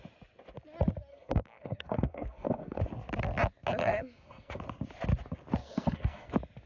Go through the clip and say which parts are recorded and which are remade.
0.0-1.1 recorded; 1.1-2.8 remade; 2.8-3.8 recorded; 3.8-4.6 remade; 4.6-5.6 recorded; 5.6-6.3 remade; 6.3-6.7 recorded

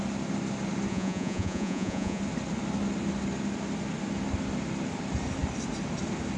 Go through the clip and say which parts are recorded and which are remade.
0.0-0.9 recorded; 0.9-2.2 remade; 2.2-6.4 recorded